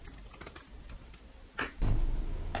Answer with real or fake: real